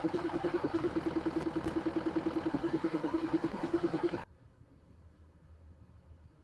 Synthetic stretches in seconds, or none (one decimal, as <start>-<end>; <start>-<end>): 0.0-0.9; 2.5-6.4